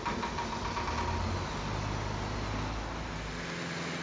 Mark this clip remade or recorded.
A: recorded